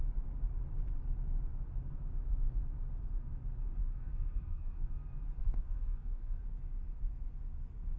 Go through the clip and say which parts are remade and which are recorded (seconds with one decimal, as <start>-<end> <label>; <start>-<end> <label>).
0.0-3.8 recorded; 3.8-4.9 remade; 4.9-5.4 recorded; 5.4-6.4 remade; 6.4-8.0 recorded